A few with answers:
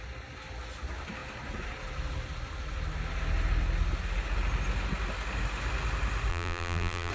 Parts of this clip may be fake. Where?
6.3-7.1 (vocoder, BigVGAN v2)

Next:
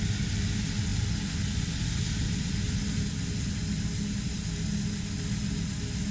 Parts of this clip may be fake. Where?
none

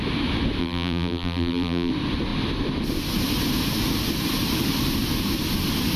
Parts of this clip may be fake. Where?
0.6-1.9 (vocoder, BigVGAN v2)

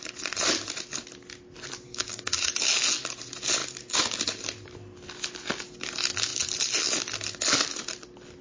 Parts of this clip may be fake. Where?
1.9-2.5 (codec, DAC)